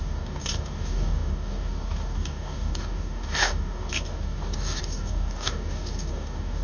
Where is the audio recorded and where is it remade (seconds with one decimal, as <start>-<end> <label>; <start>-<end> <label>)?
0.0-6.6 remade